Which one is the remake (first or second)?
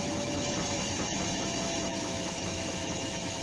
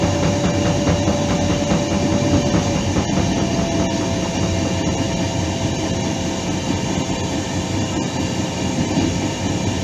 first